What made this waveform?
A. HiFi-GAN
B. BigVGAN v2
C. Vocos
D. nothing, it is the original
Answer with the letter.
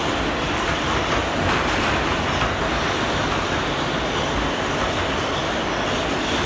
D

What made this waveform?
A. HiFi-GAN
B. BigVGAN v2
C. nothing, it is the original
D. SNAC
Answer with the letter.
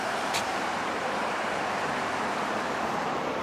B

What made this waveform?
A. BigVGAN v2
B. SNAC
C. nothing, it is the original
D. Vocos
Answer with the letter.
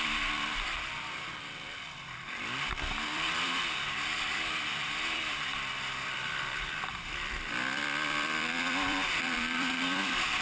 A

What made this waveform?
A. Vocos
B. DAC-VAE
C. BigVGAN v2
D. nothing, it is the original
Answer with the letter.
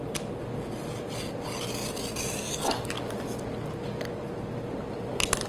D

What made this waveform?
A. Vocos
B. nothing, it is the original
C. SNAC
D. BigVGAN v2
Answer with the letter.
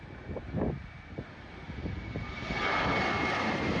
D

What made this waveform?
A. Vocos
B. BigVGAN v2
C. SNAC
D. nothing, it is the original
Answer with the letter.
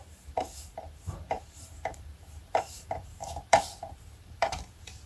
B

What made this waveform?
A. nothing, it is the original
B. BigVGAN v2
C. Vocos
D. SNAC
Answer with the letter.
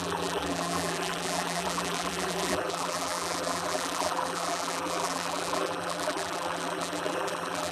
B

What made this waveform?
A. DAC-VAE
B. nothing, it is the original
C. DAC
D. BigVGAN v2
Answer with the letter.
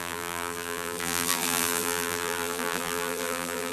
D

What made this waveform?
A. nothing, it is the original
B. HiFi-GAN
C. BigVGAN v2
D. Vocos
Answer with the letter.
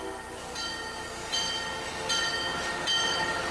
A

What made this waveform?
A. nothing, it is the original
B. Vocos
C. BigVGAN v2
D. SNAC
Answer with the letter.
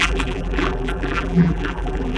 C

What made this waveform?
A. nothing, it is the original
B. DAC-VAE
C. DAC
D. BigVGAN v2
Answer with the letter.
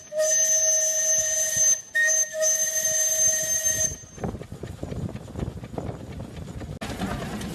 A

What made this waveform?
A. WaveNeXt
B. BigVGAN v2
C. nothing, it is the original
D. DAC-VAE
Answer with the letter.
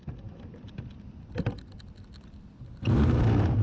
C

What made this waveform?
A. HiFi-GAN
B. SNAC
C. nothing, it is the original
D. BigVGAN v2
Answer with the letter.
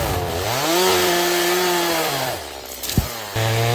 D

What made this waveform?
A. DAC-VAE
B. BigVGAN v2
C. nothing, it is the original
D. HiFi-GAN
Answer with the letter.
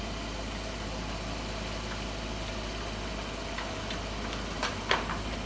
C